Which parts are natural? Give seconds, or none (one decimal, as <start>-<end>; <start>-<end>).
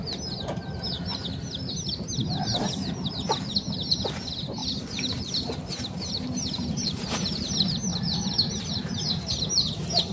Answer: 0.0-4.6; 7.5-7.9; 9.3-10.1